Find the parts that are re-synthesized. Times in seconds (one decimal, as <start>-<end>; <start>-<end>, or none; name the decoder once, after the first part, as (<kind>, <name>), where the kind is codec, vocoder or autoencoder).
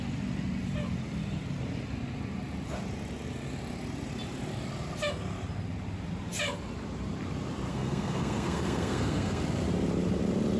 7.7-9.4 (codec, SNAC)